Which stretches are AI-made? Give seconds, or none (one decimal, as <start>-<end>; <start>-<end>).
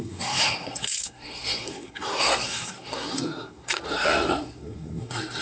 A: 0.0-5.4